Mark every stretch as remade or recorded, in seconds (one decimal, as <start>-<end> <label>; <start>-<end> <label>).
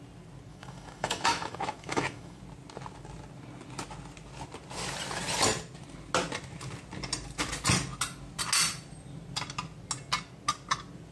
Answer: 0.0-0.5 recorded; 0.5-2.4 remade; 2.4-11.1 recorded